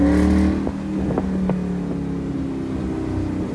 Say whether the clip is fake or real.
real